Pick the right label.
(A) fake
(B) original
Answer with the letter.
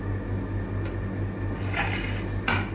B